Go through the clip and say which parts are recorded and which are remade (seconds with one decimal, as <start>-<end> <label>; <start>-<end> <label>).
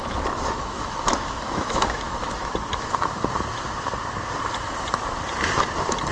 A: 0.0-2.5 remade; 2.5-6.1 recorded